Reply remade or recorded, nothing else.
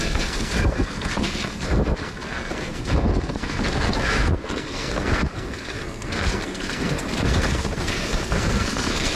remade